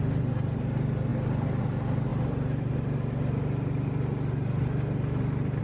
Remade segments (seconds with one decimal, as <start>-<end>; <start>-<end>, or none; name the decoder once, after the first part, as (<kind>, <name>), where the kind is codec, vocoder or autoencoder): none